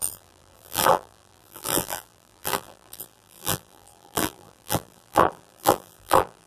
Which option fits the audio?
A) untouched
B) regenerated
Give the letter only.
B